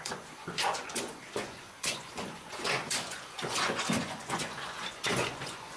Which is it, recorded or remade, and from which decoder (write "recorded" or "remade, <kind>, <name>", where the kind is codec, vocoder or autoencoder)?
remade, vocoder, Vocos